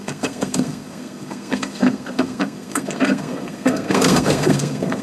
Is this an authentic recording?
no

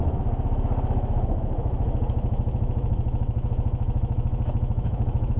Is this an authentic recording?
no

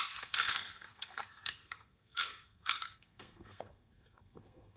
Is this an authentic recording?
no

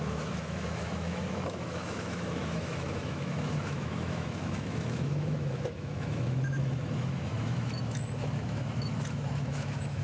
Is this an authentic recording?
no